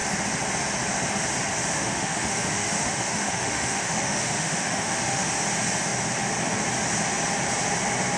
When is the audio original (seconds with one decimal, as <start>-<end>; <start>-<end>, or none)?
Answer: 0.0-1.7; 5.3-8.2